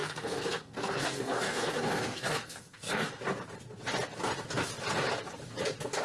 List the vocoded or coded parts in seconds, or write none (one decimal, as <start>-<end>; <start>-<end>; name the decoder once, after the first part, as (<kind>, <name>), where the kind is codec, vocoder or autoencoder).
0.0-3.2 (codec, SNAC)